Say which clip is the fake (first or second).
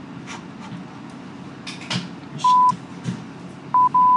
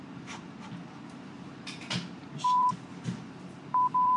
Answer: second